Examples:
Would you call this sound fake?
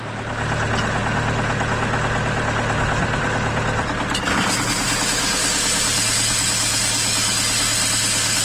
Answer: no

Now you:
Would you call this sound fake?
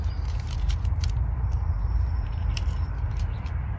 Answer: yes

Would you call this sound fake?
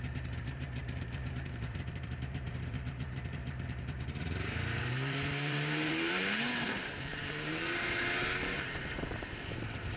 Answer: yes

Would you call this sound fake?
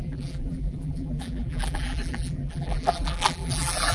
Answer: yes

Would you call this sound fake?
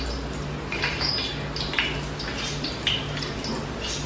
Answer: no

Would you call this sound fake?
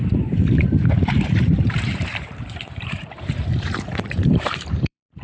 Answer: yes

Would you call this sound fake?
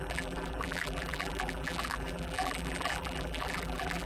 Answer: yes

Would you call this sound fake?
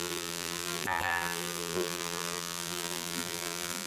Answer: yes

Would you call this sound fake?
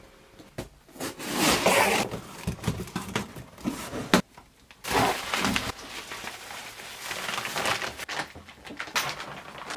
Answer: no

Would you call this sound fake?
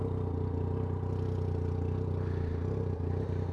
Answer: no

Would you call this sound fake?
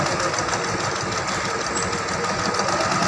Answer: no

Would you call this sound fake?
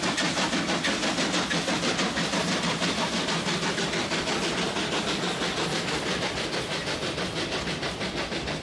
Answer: no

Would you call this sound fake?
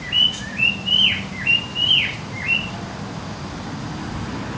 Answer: yes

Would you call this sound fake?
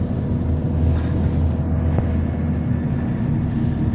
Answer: no